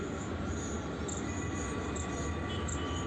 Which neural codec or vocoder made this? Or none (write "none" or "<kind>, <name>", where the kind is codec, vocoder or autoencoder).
none